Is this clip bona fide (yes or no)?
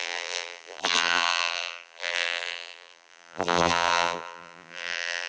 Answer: no